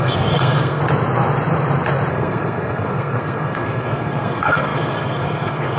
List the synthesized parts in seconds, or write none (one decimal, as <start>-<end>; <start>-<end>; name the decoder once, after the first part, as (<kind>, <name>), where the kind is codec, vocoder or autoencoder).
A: 0.0-0.8 (codec, SNAC); 2.1-5.8